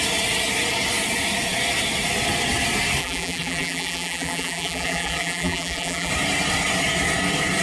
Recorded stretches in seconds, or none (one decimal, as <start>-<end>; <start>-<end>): 0.0-3.0; 6.1-7.6